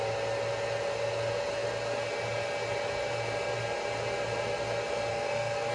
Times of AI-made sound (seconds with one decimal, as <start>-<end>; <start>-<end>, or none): 5.1-5.7